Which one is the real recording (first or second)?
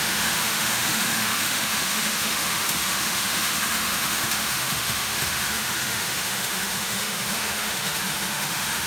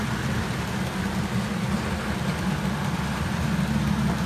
second